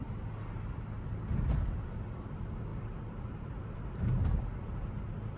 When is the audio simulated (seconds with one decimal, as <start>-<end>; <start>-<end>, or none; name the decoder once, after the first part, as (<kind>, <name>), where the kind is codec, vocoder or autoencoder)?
2.7-3.9 (vocoder, BigVGAN v2)